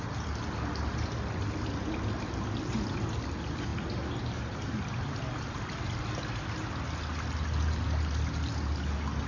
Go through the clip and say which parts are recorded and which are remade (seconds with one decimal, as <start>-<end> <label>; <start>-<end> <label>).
0.0-9.3 recorded